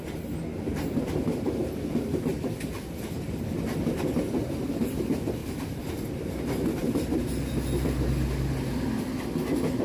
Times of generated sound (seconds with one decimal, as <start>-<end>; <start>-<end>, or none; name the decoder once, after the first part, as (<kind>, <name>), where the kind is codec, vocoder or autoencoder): 0.5-2.8 (vocoder, BigVGAN v2); 5.4-6.1